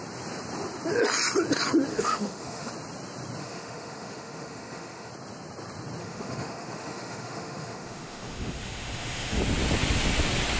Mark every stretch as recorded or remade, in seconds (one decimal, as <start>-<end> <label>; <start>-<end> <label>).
0.0-1.9 recorded; 1.9-2.7 remade; 2.7-3.4 recorded; 3.4-5.1 remade; 5.1-6.0 recorded; 6.0-9.4 remade; 9.4-10.6 recorded